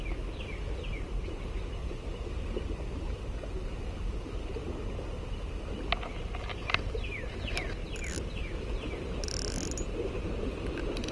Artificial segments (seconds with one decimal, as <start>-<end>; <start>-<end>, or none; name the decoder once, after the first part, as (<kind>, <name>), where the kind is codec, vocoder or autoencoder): 1.8-3.2 (vocoder, BigVGAN v2)

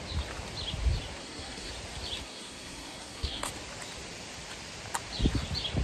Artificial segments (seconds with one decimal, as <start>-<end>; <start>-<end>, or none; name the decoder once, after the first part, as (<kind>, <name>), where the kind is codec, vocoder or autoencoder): 1.2-1.7 (codec, SNAC); 2.2-3.5